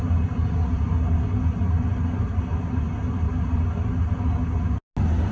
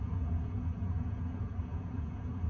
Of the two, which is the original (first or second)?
first